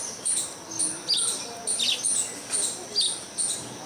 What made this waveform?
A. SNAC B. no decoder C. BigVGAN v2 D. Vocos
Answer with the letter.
B